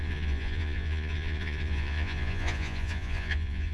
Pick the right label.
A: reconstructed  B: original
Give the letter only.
A